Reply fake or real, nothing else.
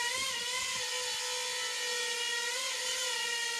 real